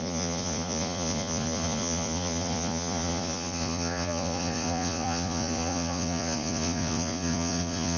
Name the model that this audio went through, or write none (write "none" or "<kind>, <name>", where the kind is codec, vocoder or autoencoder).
vocoder, Vocos